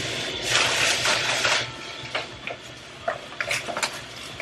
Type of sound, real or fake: real